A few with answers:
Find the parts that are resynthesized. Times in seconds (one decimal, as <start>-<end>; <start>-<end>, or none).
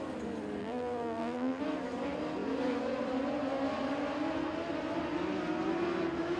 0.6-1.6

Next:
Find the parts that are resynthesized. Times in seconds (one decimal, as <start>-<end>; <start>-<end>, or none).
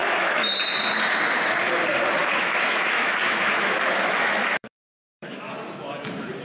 0.0-0.5; 2.2-5.5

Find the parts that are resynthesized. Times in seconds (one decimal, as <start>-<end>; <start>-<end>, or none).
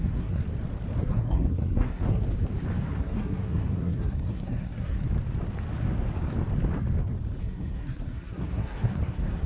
0.0-0.4; 1.0-2.2; 2.9-5.0; 7.4-9.5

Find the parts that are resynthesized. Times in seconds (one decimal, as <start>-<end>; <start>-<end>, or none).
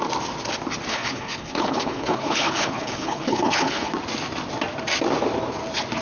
0.9-3.9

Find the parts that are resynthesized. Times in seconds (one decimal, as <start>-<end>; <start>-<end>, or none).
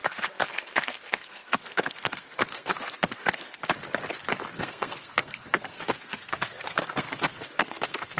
0.0-3.6; 4.6-8.2